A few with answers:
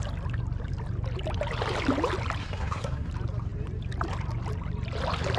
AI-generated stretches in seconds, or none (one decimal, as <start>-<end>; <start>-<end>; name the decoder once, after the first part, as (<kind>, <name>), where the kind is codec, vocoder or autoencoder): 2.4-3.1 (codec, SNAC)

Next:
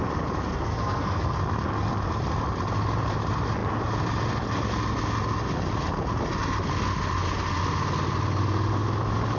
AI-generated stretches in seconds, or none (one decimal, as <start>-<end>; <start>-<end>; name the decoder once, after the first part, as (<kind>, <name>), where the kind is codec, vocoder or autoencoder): 0.5-1.4 (codec, SNAC)

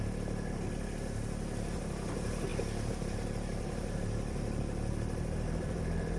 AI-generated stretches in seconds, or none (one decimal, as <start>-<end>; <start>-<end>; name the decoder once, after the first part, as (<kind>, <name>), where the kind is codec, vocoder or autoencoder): 2.5-6.2 (vocoder, BigVGAN v2)

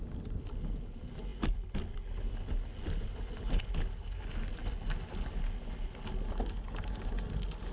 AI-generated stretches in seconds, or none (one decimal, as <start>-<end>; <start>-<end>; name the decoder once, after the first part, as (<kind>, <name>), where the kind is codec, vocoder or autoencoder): none

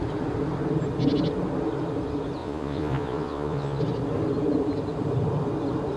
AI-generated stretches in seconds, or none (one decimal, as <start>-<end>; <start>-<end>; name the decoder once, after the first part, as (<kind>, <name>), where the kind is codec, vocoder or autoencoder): 2.4-3.8 (vocoder, Vocos)